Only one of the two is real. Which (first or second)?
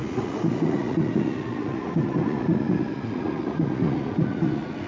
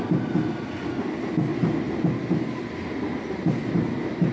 second